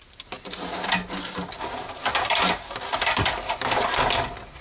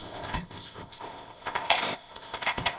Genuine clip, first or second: first